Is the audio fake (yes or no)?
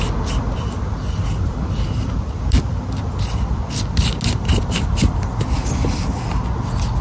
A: no